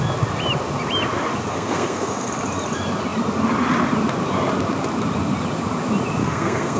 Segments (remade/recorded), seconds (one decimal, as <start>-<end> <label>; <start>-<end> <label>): 0.0-1.5 recorded; 1.5-2.3 remade; 2.3-6.2 recorded; 6.2-6.8 remade